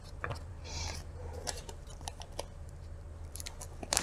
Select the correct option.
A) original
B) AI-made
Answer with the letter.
B